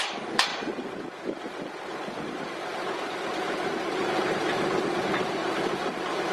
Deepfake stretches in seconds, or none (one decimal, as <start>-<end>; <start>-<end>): 0.0-0.5; 2.3-6.3